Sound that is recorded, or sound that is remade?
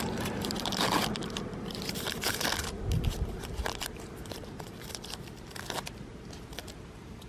remade